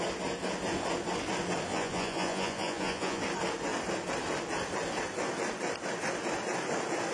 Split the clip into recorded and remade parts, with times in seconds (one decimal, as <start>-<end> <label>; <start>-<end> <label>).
0.0-1.7 recorded; 1.7-3.2 remade; 3.2-7.1 recorded